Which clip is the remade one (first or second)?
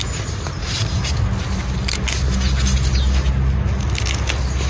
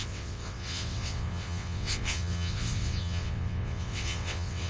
second